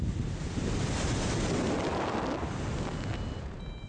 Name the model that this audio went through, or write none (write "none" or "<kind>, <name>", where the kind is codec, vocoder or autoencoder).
none